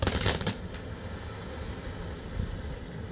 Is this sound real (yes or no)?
yes